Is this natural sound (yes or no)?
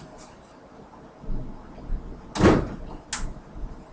yes